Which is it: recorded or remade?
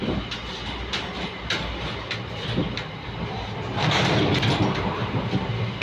recorded